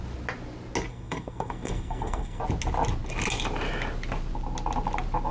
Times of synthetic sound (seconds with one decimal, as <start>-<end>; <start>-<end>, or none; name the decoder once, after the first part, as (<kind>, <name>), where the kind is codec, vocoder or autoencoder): 0.9-2.4 (codec, SNAC)